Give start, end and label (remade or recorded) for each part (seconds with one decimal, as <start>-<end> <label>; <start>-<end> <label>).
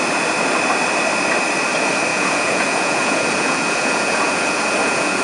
0.0-2.1 recorded; 2.1-5.2 remade